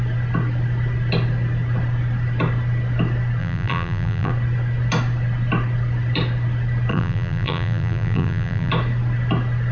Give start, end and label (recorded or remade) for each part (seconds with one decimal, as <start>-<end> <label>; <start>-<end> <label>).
0.0-3.4 recorded; 3.4-4.3 remade; 4.3-6.9 recorded; 6.9-8.7 remade; 8.7-9.7 recorded